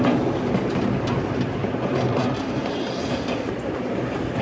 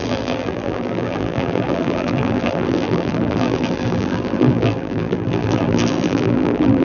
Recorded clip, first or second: first